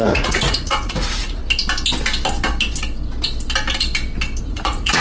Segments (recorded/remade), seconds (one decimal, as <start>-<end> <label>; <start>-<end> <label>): 0.0-1.4 remade; 1.4-4.4 recorded; 4.4-5.0 remade